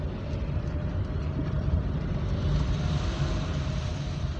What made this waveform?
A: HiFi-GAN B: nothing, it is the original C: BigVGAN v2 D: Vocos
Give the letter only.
B